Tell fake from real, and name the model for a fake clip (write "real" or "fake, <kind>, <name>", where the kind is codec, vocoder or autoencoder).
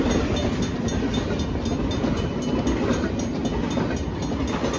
real